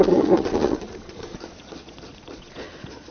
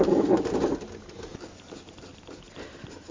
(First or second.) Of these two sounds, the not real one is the first